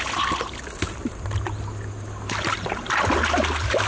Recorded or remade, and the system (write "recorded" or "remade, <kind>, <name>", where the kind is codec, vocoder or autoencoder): recorded